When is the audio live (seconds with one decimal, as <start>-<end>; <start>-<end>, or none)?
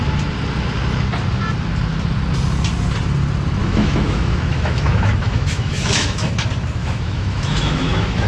0.0-3.6; 6.3-6.8